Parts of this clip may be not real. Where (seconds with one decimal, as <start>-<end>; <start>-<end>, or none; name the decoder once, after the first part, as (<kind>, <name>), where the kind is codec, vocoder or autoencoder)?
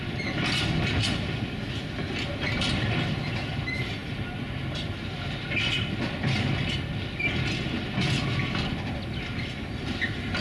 none